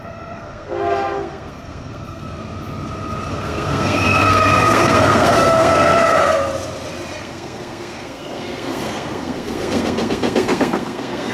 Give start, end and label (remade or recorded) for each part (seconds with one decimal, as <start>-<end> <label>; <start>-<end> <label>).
0.0-2.4 remade; 2.4-3.3 recorded; 3.3-6.4 remade; 6.4-7.2 recorded; 7.2-11.3 remade